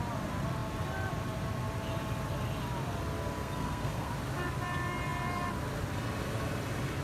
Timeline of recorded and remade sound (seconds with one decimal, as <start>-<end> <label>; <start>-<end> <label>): 0.0-3.4 recorded; 3.4-4.1 remade; 4.1-7.0 recorded